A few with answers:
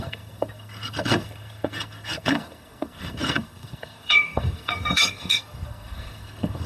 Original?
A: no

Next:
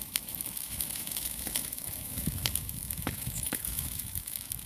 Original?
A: no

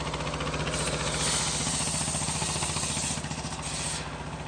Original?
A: yes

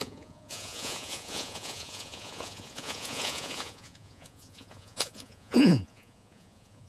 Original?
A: no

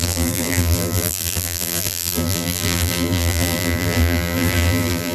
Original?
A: no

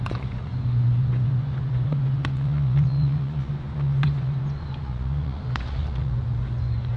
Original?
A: no